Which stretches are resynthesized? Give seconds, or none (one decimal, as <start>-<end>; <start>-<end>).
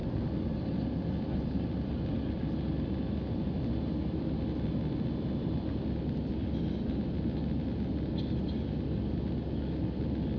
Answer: none